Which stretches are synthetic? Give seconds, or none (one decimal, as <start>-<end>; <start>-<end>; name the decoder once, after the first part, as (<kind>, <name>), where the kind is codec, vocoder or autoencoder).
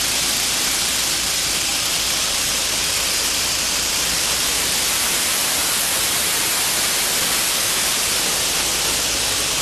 none